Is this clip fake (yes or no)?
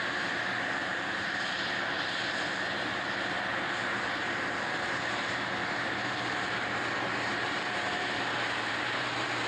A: yes